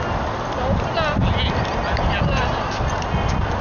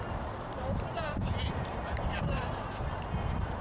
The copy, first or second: second